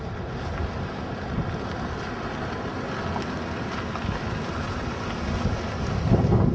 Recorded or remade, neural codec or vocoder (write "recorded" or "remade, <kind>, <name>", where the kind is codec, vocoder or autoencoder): recorded